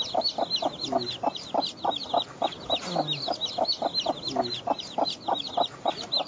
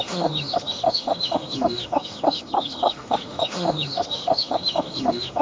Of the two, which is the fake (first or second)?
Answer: second